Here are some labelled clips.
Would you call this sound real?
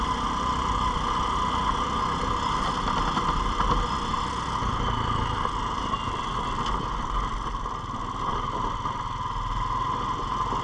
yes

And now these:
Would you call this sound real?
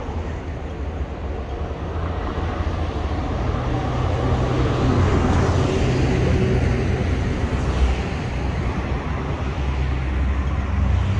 yes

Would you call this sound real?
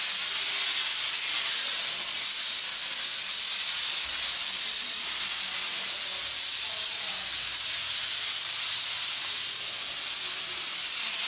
yes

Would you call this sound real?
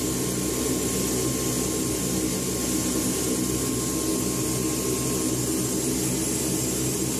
yes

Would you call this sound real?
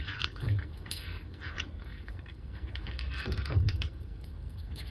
no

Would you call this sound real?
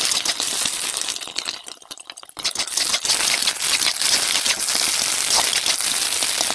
yes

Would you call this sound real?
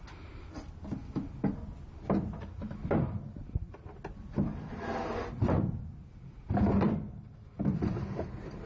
yes